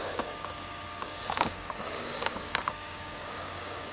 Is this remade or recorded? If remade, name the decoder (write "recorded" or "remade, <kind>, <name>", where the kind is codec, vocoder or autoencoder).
remade, codec, DAC